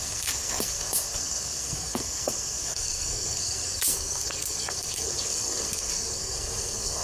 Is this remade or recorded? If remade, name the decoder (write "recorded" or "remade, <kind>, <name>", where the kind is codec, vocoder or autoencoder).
remade, codec, SNAC